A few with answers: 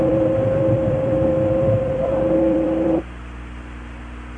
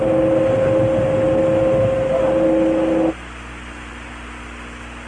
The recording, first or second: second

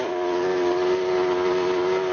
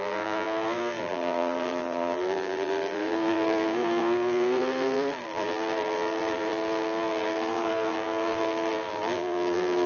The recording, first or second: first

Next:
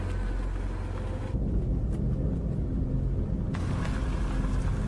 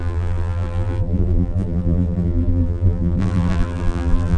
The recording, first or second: first